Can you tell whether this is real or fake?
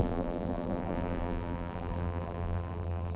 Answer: fake